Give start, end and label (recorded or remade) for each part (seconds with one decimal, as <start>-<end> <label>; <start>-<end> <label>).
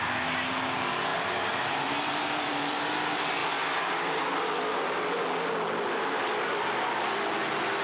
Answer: 0.0-1.1 recorded; 1.1-2.9 remade; 2.9-3.4 recorded; 3.4-4.7 remade; 4.7-7.8 recorded